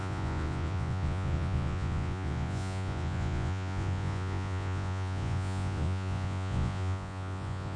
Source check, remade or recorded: remade